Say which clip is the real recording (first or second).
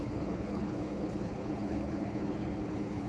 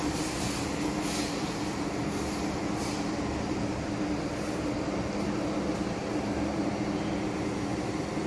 second